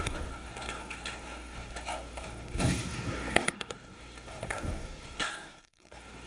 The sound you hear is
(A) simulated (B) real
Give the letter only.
A